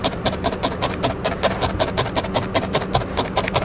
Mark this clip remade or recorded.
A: recorded